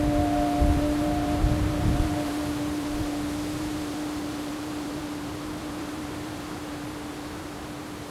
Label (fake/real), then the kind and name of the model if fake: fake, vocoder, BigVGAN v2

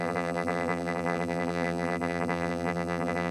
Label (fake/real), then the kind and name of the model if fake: fake, vocoder, BigVGAN v2